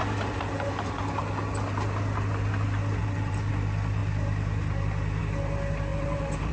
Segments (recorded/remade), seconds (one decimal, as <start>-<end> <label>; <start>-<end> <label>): 0.0-0.7 remade; 0.7-3.0 recorded; 3.0-3.5 remade; 3.5-5.9 recorded; 5.9-6.5 remade